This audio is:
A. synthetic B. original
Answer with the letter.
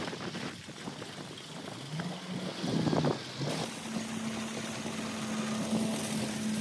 B